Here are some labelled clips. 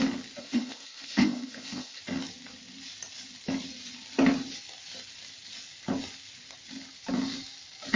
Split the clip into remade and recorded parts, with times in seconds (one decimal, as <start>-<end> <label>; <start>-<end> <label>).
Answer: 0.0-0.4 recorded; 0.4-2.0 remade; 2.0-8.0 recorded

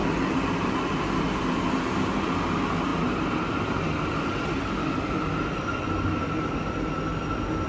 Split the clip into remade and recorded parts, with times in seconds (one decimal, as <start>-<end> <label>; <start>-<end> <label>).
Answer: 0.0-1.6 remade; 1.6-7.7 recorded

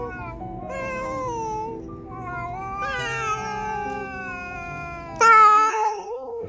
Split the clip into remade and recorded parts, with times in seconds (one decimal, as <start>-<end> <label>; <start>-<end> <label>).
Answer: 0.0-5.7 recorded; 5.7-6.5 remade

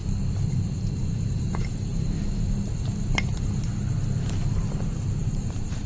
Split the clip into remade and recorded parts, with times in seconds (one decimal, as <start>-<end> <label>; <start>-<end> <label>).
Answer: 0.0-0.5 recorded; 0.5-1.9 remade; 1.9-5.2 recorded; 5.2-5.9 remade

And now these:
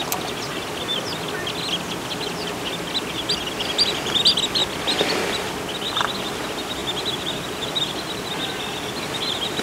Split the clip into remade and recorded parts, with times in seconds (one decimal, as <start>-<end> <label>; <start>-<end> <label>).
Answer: 0.0-3.6 recorded; 3.6-4.6 remade; 4.6-6.2 recorded; 6.2-6.8 remade; 6.8-9.6 recorded

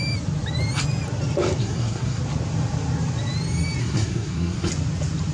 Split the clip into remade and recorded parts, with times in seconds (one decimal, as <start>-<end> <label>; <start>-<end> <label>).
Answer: 0.0-1.6 recorded; 1.6-2.2 remade; 2.2-3.8 recorded; 3.8-4.7 remade; 4.7-5.3 recorded

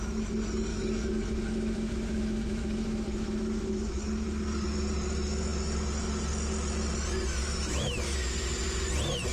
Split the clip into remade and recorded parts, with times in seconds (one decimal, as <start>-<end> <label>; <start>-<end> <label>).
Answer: 0.0-0.7 recorded; 0.7-4.0 remade; 4.0-7.4 recorded; 7.4-8.0 remade; 8.0-9.3 recorded

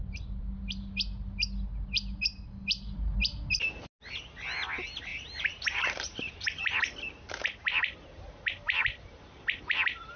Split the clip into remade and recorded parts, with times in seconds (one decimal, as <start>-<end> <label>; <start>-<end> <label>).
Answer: 0.0-5.1 recorded; 5.1-6.6 remade; 6.6-10.2 recorded